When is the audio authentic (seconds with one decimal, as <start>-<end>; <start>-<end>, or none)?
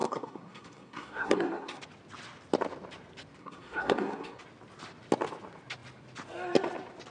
1.8-3.4; 4.4-7.1